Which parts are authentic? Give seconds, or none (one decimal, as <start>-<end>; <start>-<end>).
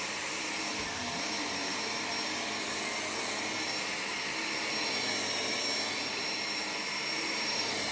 2.1-6.1